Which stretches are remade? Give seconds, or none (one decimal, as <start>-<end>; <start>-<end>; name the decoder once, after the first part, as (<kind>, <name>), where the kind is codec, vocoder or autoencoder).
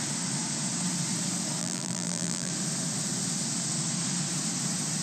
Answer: 1.6-2.5 (vocoder, BigVGAN v2)